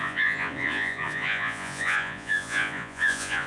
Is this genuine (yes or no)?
no